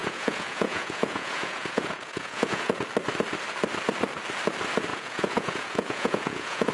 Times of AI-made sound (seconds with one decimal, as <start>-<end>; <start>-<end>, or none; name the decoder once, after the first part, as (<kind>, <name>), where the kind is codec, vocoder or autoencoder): 0.0-2.8 (vocoder, Vocos); 4.9-6.7